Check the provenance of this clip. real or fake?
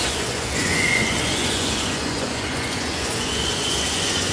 fake